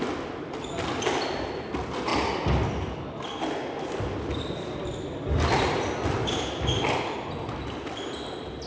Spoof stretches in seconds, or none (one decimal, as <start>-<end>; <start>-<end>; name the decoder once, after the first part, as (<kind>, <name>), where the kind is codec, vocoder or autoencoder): none